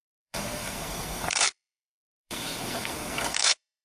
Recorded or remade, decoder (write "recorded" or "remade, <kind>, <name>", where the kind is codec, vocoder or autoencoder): remade, codec, SNAC